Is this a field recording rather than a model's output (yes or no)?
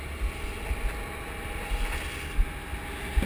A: yes